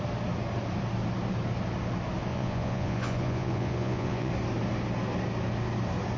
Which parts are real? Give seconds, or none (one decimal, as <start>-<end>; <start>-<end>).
0.0-2.3; 4.3-6.2